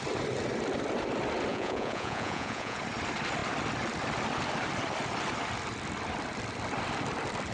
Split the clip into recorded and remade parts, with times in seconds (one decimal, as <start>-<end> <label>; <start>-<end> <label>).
0.0-1.5 recorded; 1.5-2.8 remade; 2.8-7.5 recorded